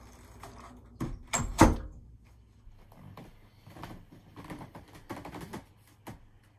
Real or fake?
real